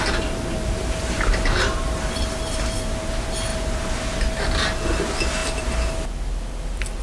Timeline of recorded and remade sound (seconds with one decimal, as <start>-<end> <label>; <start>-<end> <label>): 0.0-7.0 recorded